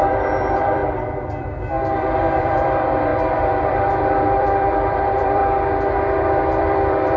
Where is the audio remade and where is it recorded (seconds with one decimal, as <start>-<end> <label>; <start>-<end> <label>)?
0.0-5.4 remade; 5.4-6.6 recorded; 6.6-7.2 remade